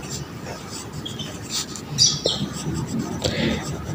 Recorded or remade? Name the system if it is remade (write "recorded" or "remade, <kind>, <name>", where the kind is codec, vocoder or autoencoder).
recorded